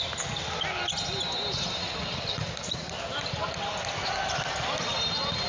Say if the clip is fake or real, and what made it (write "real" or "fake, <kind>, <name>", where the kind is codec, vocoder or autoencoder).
real